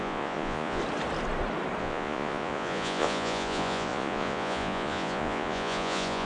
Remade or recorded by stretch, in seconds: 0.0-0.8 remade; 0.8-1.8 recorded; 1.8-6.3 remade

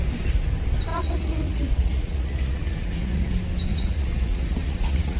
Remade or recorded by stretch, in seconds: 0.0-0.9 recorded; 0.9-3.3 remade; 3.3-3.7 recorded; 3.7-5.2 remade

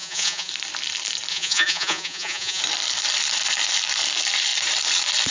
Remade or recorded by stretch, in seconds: 0.0-0.5 remade; 0.5-1.3 recorded; 1.3-2.6 remade; 2.6-5.3 recorded